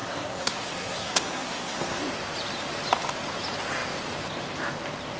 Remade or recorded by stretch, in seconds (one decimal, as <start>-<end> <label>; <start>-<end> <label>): 0.0-2.0 remade; 2.0-5.2 recorded